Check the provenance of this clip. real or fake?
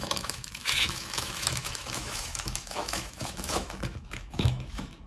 fake